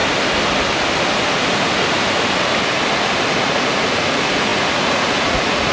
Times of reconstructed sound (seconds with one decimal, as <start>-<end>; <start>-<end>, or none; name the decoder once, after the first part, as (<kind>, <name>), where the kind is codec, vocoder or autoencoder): 3.4-5.7 (vocoder, Vocos)

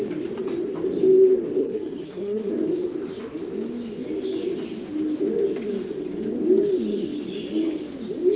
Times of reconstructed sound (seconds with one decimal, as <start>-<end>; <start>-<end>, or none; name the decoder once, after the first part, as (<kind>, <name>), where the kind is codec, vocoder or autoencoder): 1.6-2.5 (codec, SNAC)